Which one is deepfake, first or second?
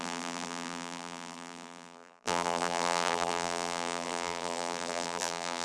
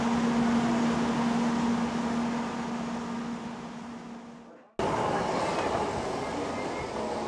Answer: first